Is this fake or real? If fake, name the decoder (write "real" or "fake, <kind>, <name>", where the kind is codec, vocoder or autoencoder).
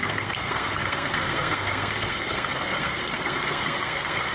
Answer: fake, codec, SNAC